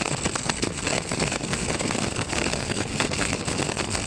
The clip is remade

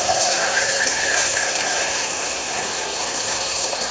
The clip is remade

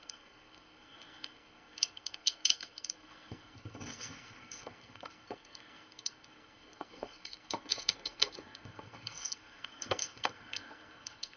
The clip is remade